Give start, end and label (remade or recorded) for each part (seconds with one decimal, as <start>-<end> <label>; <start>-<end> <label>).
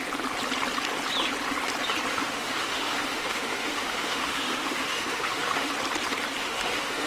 0.0-2.1 recorded; 2.1-5.7 remade; 5.7-6.4 recorded; 6.4-7.1 remade